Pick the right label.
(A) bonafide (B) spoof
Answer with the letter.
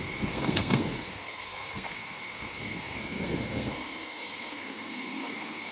B